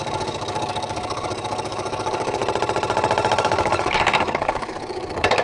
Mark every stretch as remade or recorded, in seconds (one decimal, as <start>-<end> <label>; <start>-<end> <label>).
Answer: 0.0-2.4 remade; 2.4-3.4 recorded; 3.4-5.4 remade